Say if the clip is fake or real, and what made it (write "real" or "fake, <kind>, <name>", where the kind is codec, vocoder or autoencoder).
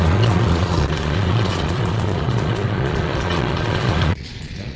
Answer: fake, vocoder, Vocos